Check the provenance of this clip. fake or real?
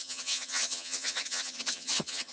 fake